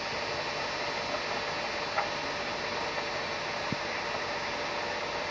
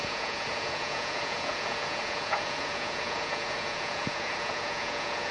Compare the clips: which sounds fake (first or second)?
second